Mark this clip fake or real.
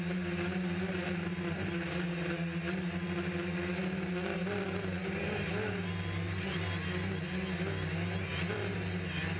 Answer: real